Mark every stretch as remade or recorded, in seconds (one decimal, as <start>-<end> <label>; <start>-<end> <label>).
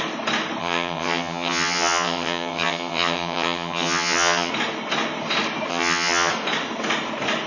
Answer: 0.0-0.6 recorded; 0.6-4.5 remade; 4.5-5.7 recorded; 5.7-6.3 remade; 6.3-7.5 recorded